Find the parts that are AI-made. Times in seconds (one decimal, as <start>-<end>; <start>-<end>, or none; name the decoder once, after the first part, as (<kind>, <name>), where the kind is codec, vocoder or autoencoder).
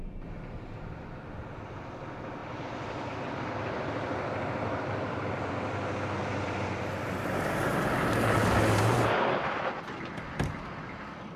2.4-5.5 (vocoder, BigVGAN v2); 6.2-7.7